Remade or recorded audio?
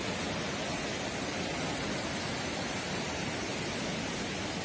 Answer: recorded